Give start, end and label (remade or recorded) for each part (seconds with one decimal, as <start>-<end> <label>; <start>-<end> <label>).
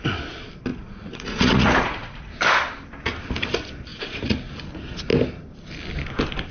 0.0-0.7 recorded; 0.7-2.3 remade; 2.3-3.9 recorded; 3.9-4.5 remade; 4.5-6.5 recorded